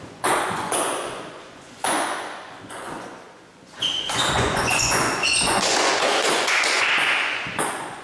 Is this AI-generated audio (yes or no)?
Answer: yes